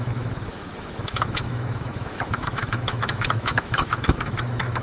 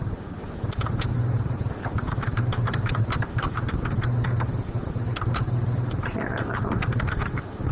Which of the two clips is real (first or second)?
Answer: second